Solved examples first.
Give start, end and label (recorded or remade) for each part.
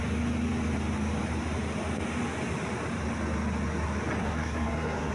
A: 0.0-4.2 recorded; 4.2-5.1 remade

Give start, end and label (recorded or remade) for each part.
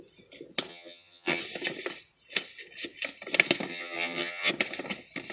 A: 0.0-0.7 recorded; 0.7-1.4 remade; 1.4-3.7 recorded; 3.7-4.5 remade; 4.5-5.3 recorded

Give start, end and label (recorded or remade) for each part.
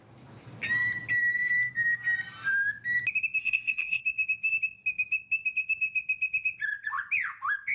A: 0.0-3.4 recorded; 3.4-4.0 remade; 4.0-7.7 recorded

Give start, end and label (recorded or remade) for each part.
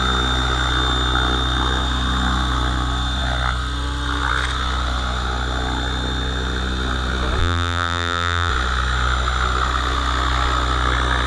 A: 0.0-7.4 recorded; 7.4-8.5 remade; 8.5-11.3 recorded